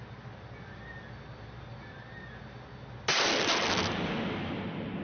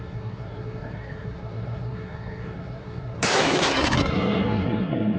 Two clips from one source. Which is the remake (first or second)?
second